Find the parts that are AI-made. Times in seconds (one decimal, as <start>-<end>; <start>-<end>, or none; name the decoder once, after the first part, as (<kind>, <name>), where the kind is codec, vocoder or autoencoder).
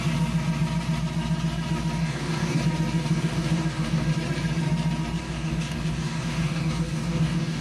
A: 2.0-2.6 (codec, DAC); 3.0-4.1; 5.2-7.6